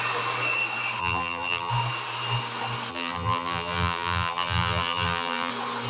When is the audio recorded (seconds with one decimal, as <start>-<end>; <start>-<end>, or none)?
0.0-1.0; 1.7-2.9; 5.5-5.9